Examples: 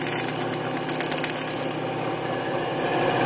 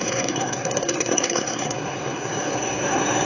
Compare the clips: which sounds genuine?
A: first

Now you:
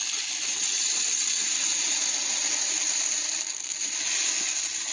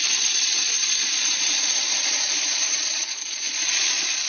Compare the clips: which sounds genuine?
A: first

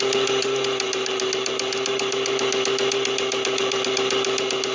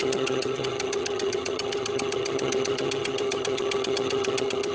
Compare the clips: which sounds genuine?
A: first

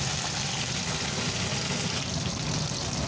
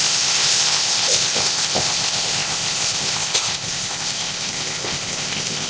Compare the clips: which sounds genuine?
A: first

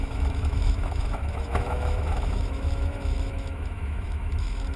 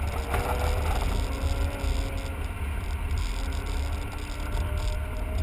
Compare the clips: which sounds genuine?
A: second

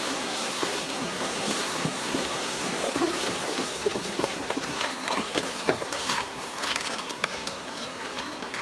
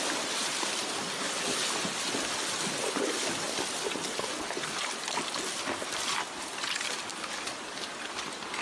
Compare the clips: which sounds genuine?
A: second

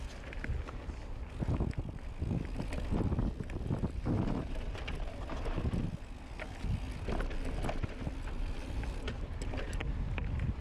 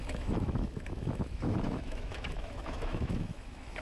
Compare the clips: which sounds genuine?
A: first